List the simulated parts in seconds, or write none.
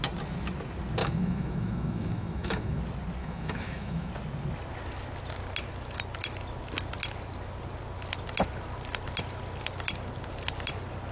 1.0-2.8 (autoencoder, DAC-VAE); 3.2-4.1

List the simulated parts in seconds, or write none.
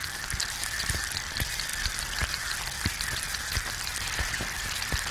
none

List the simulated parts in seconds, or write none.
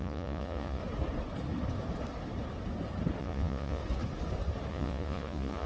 0.0-0.8 (vocoder, Vocos); 3.2-3.8; 4.7-5.7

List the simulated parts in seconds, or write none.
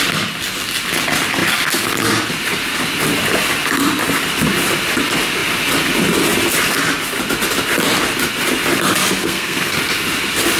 9.2-9.8 (codec, SNAC)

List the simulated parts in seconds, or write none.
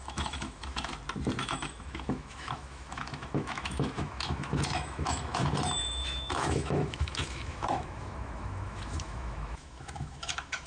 0.0-0.9 (autoencoder, DAC-VAE); 1.4-10.7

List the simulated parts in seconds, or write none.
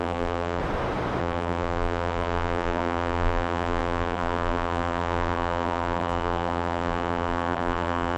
0.0-0.6 (vocoder, BigVGAN v2); 1.2-8.2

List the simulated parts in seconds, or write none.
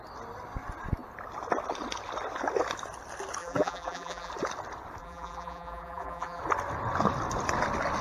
3.4-4.3 (vocoder, BigVGAN v2); 5.0-6.4